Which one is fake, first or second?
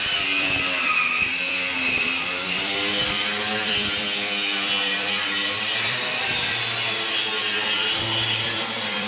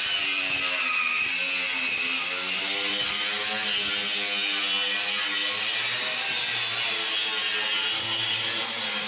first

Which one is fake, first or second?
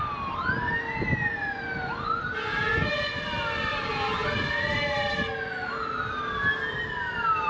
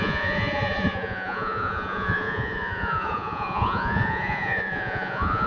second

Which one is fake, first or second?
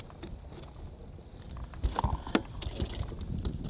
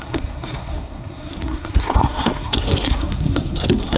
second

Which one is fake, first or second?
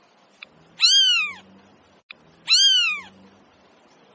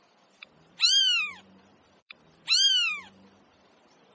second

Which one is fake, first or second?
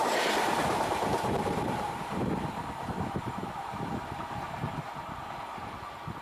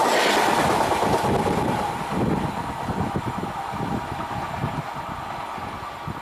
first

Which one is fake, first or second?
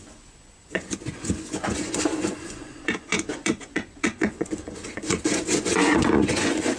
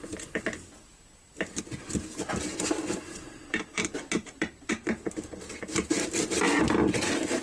first